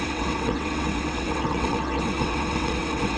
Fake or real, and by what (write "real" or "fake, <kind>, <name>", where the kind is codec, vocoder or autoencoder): fake, vocoder, WaveNeXt